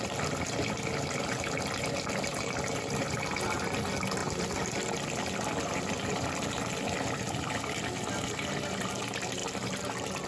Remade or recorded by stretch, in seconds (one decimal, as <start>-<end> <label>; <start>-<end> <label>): 0.0-10.3 recorded

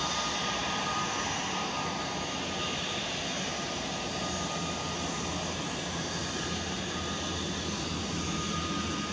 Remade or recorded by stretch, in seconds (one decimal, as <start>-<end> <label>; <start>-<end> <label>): 0.0-0.6 recorded; 0.6-3.0 remade; 3.0-6.2 recorded; 6.2-7.3 remade; 7.3-9.1 recorded

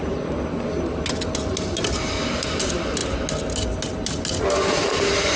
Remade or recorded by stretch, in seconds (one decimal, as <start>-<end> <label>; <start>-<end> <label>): 0.0-5.4 recorded

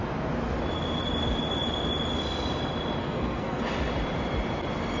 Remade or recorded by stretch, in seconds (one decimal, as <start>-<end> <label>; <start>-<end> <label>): 0.0-3.0 recorded; 3.0-3.6 remade; 3.6-5.0 recorded

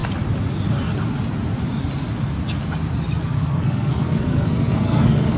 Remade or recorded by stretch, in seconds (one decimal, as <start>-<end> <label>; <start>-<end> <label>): 0.0-3.2 recorded; 3.2-5.4 remade